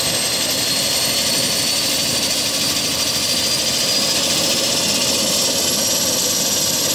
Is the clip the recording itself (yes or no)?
yes